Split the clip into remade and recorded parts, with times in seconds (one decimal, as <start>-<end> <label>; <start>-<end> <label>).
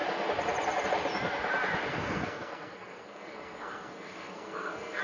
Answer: 0.0-1.9 recorded; 1.9-5.0 remade